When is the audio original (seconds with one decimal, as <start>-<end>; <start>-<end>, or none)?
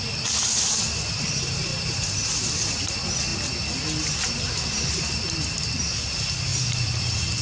0.0-1.7; 2.9-6.5; 7.0-7.4